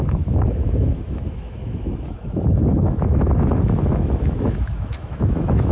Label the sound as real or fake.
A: fake